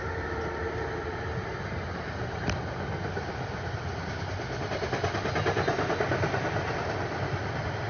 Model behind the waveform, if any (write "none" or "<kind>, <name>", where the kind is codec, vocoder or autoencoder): none